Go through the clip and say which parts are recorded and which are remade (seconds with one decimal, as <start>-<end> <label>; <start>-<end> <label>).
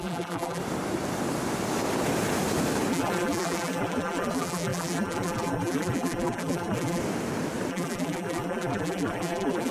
0.0-0.6 remade; 0.6-2.9 recorded; 2.9-7.0 remade; 7.0-7.7 recorded; 7.7-9.7 remade